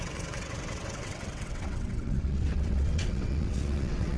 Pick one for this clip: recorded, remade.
remade